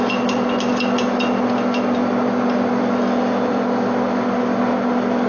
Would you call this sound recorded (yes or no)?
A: yes